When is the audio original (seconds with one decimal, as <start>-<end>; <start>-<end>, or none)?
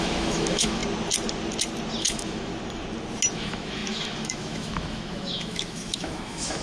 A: 0.8-2.0; 2.5-3.3